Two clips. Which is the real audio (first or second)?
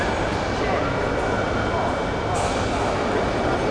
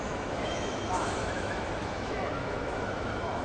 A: first